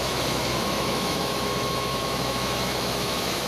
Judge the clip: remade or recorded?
remade